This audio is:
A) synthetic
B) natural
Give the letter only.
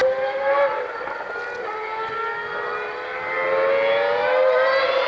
B